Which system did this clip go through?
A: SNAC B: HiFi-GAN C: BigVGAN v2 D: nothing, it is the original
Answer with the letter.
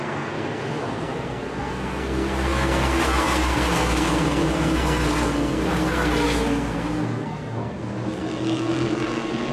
A